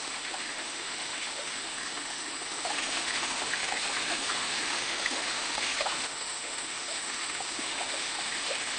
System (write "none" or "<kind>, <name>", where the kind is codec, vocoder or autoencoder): autoencoder, DAC-VAE